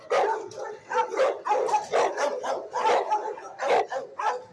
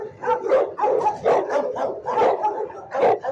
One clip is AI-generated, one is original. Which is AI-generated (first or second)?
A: second